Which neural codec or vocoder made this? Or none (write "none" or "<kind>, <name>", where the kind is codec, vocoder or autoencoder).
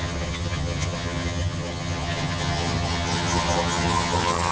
vocoder, HiFi-GAN